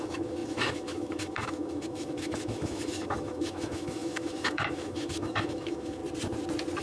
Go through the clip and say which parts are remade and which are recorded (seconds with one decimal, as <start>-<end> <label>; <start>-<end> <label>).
0.0-6.0 remade; 6.0-6.8 recorded